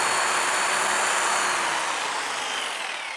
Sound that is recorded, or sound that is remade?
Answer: recorded